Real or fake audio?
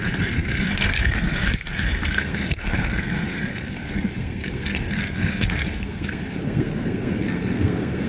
fake